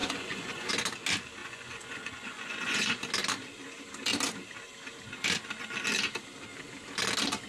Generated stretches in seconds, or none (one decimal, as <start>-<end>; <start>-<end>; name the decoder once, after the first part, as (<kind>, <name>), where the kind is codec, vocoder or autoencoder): 0.0-0.7 (vocoder, Vocos); 1.4-3.0